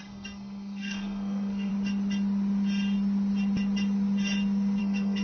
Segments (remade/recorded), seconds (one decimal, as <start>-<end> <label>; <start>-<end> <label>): 0.0-1.7 remade; 1.7-4.8 recorded; 4.8-5.2 remade